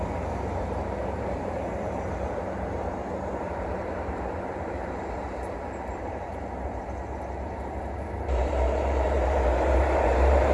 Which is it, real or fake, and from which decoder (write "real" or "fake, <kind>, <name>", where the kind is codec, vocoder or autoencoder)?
fake, vocoder, BigVGAN v2